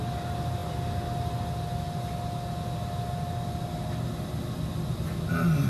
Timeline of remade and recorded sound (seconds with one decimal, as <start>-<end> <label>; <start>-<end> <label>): 0.0-5.7 recorded